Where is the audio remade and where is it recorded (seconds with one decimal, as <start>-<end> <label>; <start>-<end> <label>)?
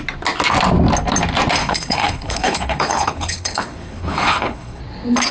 0.0-1.6 recorded; 1.6-4.8 remade; 4.8-5.3 recorded